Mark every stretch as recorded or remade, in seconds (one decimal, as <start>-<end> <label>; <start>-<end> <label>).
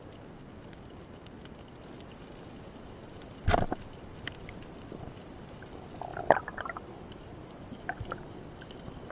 0.0-9.1 recorded